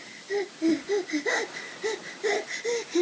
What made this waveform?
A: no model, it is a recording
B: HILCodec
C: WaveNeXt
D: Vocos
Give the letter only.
A